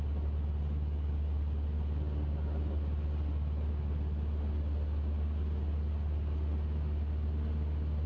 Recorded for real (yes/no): yes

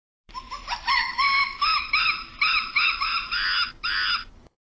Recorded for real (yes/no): no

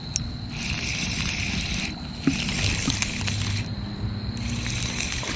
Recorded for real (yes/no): yes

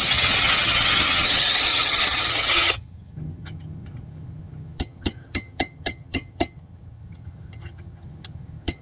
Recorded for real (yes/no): no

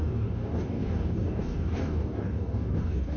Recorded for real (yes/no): no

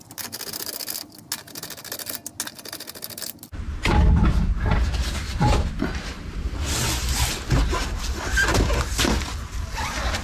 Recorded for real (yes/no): yes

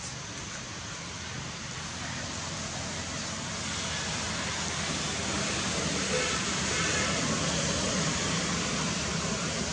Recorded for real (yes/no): yes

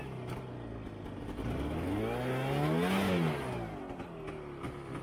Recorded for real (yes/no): yes